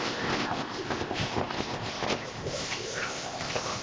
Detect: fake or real fake